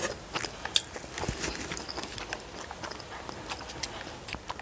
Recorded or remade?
recorded